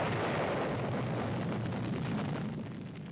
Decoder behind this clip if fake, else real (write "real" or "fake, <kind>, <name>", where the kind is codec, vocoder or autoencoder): real